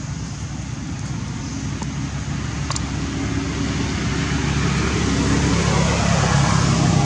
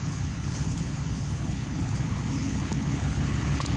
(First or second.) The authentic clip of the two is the first